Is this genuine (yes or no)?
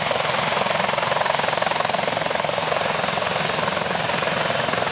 no